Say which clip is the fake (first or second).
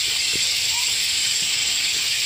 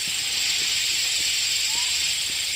first